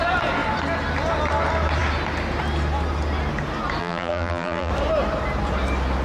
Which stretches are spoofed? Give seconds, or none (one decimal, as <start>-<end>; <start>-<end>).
3.8-4.7